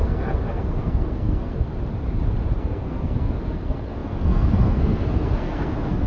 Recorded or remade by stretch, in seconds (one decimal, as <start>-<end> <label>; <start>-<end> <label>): 0.0-1.7 remade; 1.7-2.6 recorded; 2.6-6.1 remade